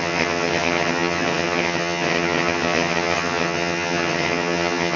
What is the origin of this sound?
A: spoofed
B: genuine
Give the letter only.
A